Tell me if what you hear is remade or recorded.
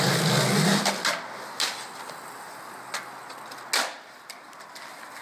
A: recorded